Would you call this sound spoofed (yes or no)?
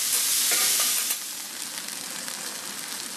no